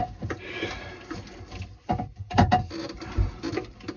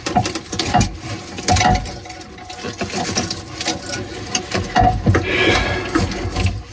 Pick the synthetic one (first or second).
first